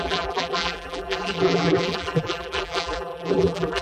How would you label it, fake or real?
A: fake